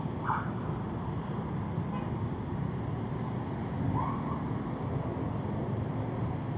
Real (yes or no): yes